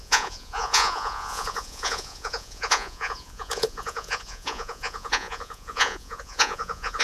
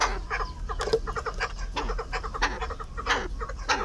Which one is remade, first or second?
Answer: first